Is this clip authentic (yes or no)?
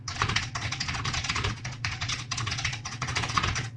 no